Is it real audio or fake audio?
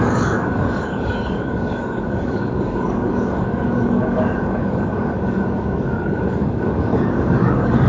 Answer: fake